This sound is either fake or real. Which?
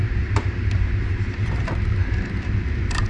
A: fake